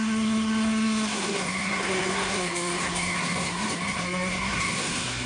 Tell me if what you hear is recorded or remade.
remade